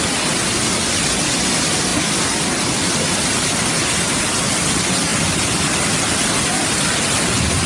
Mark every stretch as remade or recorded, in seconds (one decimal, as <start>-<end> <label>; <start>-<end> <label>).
0.0-7.7 recorded